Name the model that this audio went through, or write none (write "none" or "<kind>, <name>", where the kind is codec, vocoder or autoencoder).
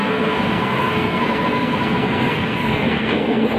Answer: codec, SNAC